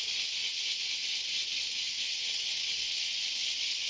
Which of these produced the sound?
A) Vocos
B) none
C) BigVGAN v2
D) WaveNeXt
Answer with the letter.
D